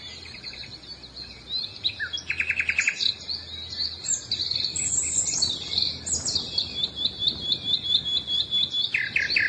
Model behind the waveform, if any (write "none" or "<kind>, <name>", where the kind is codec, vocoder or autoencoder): none